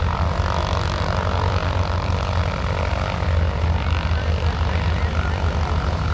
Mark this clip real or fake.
real